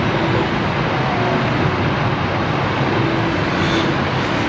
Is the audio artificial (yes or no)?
no